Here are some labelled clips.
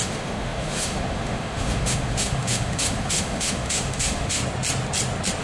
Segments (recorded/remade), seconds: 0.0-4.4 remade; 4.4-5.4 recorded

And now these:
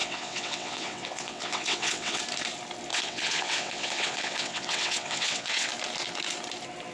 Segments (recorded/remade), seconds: 0.0-2.2 remade; 2.2-2.9 recorded; 2.9-5.7 remade; 5.7-6.9 recorded

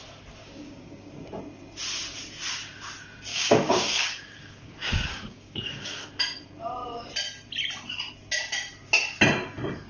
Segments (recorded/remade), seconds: 0.0-0.4 recorded; 0.4-1.1 remade; 1.1-3.3 recorded; 3.3-6.1 remade; 6.1-9.9 recorded

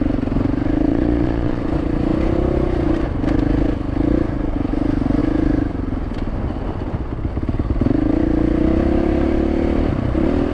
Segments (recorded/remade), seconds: 0.0-0.9 recorded; 0.9-1.6 remade; 1.6-10.5 recorded

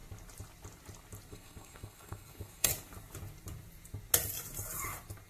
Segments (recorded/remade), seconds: 0.0-1.3 recorded; 1.3-2.7 remade; 2.7-5.3 recorded

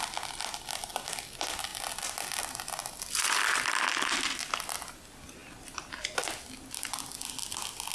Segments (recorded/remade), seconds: 0.0-7.9 recorded

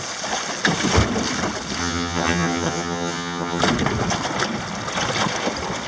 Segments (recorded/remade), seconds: 0.0-1.8 recorded; 1.8-3.6 remade; 3.6-5.9 recorded